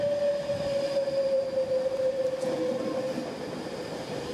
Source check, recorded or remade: recorded